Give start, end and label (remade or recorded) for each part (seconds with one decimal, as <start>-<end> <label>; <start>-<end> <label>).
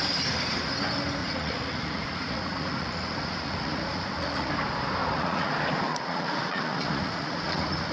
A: 0.0-1.2 recorded; 1.2-4.5 remade; 4.5-5.0 recorded; 5.0-5.5 remade; 5.5-5.9 recorded; 5.9-7.9 remade